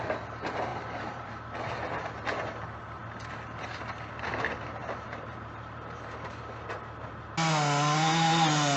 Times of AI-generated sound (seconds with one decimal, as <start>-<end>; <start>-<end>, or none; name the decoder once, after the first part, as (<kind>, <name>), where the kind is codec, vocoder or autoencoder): 0.7-1.3 (vocoder, BigVGAN v2); 4.8-7.1